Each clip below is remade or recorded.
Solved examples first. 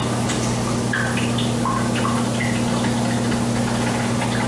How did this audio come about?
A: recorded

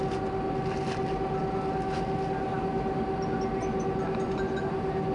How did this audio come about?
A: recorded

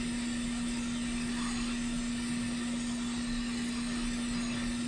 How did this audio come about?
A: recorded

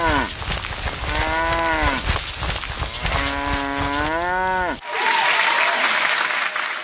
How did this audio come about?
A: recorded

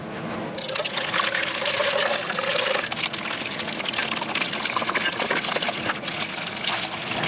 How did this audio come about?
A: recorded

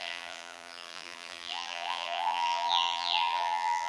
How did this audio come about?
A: remade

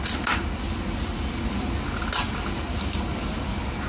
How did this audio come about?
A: recorded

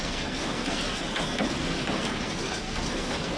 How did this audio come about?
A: remade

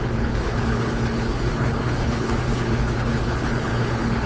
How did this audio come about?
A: remade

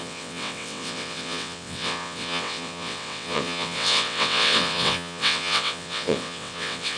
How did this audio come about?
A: remade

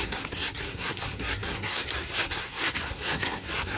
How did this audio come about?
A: remade